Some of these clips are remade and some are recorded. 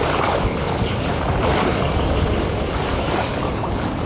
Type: remade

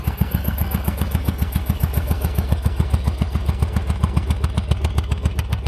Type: remade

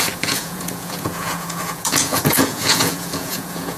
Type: remade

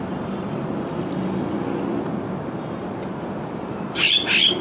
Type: recorded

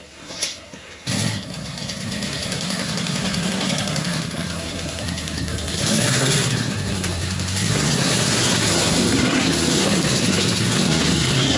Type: remade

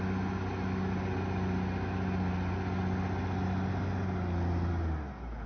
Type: recorded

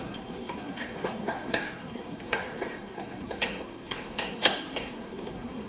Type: remade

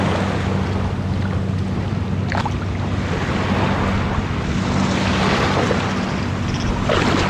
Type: recorded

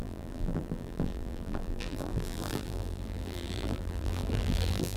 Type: remade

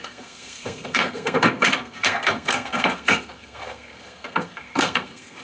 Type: remade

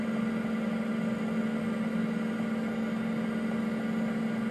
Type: recorded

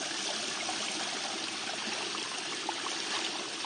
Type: recorded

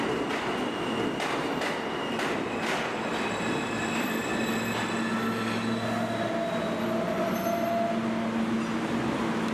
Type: recorded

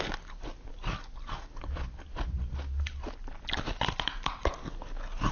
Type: recorded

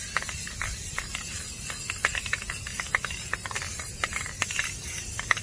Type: recorded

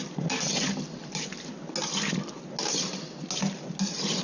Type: recorded